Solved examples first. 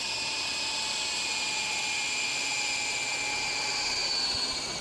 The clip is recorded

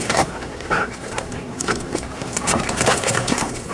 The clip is remade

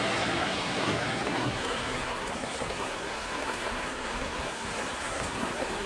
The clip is remade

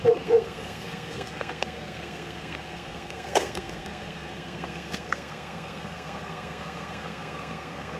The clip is remade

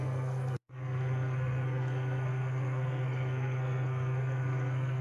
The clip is remade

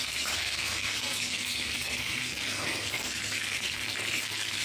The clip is remade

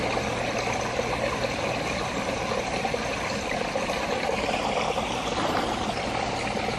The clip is recorded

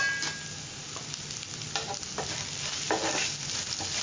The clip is recorded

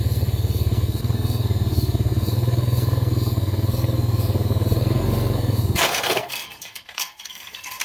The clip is remade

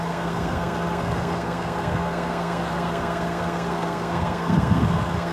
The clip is remade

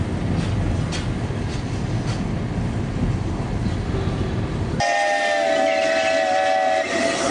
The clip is recorded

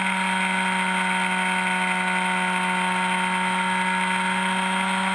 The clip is recorded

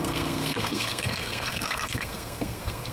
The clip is remade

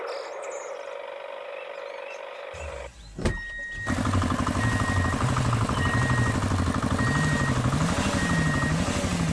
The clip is recorded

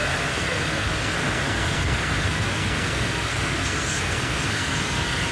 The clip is remade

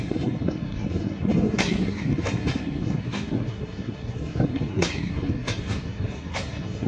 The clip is remade